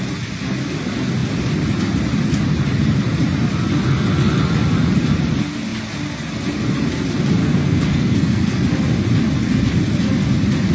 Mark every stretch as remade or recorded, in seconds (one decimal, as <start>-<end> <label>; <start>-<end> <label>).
0.0-7.4 recorded; 7.4-8.6 remade; 8.6-10.7 recorded